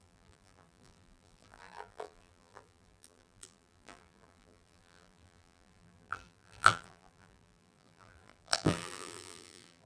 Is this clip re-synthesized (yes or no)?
yes